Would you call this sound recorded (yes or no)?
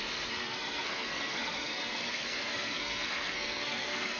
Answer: no